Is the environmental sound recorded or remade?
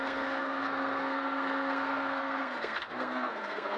remade